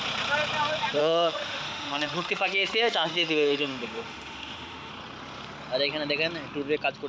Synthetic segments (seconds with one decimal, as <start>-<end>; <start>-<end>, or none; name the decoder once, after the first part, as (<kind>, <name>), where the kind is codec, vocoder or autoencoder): 1.0-4.9 (autoencoder, DAC-VAE)